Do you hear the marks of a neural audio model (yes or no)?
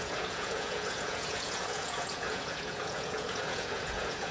yes